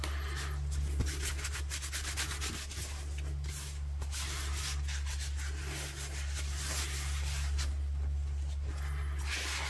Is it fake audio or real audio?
real